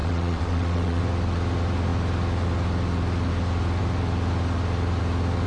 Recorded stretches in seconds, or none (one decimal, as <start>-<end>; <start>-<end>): 1.0-5.5